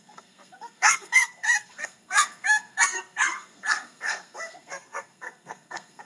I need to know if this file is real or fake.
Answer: fake